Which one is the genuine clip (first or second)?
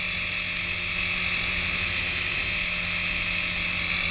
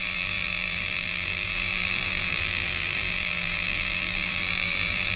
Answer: first